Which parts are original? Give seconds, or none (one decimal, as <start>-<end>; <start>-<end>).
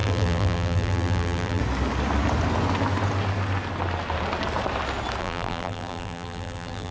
1.6-5.2